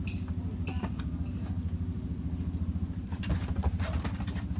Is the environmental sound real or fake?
real